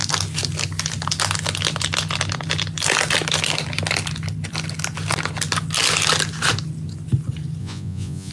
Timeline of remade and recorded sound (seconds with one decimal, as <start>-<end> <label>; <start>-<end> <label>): 0.0-7.6 recorded; 7.6-8.3 remade